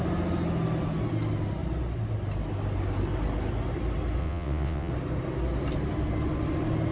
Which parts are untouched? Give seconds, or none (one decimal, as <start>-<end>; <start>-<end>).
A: 0.0-4.2; 4.9-6.9

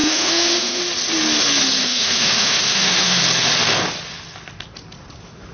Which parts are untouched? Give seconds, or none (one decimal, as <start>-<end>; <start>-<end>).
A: 0.8-1.8; 3.2-5.5

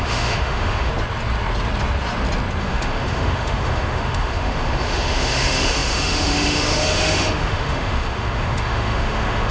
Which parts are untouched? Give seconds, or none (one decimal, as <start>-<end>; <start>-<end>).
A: 0.9-2.6

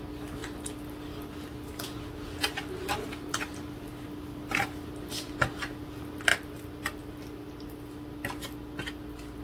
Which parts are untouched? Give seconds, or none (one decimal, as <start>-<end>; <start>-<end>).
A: 0.0-9.4

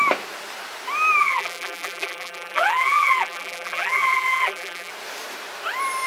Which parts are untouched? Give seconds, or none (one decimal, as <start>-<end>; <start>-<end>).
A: 0.0-1.2; 4.9-6.1